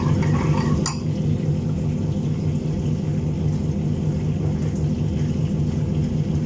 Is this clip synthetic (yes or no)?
no